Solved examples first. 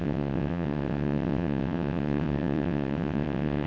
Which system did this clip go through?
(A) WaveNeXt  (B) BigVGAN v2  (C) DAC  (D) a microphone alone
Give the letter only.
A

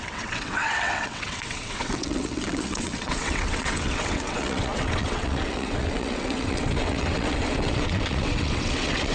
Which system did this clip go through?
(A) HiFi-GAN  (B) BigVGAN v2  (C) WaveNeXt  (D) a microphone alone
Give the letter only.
C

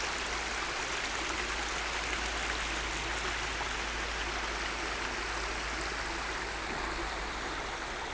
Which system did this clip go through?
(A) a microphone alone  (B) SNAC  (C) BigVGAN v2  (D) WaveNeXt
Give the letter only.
A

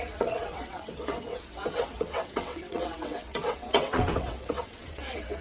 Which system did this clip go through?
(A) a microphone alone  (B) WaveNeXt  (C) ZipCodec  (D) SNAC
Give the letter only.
B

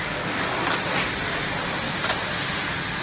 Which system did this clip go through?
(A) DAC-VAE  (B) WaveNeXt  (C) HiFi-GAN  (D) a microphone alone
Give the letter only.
D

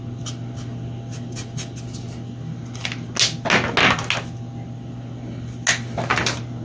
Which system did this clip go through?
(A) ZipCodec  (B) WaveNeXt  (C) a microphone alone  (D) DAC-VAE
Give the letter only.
C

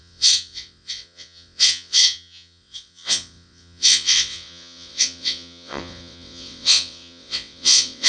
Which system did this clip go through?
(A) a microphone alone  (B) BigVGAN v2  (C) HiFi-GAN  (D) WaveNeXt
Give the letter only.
D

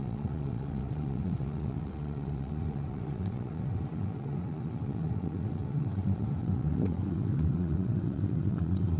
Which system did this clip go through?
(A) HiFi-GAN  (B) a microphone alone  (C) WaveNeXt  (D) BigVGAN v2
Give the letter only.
C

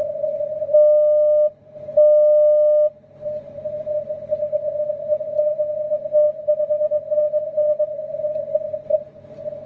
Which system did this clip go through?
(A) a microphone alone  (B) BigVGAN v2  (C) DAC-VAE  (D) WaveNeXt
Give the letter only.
A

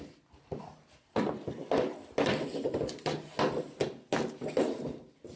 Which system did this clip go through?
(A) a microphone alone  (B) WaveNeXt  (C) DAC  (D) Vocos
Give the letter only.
A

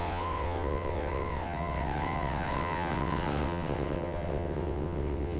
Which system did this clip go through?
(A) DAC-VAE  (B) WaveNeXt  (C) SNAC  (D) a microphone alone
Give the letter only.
B